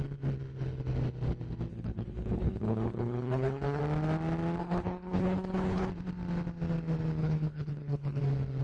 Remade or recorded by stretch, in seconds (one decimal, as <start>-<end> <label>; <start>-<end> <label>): 0.0-1.7 recorded; 1.7-3.8 remade; 3.8-4.6 recorded; 4.6-5.9 remade; 5.9-7.2 recorded; 7.2-8.2 remade; 8.2-8.6 recorded